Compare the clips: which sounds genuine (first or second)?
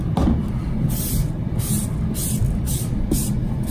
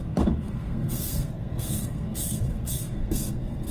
first